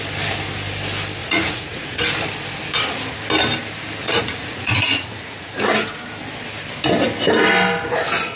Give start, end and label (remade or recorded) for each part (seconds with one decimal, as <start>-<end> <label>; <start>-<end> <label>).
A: 0.0-1.2 recorded; 1.2-2.0 remade; 2.0-4.0 recorded; 4.0-5.5 remade; 5.5-8.4 recorded